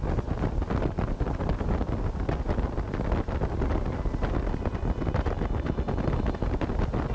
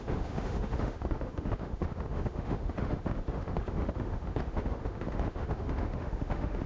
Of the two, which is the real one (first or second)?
first